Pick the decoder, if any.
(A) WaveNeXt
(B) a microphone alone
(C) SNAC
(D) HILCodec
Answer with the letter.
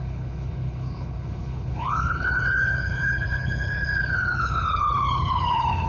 D